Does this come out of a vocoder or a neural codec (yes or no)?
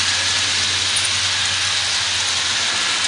no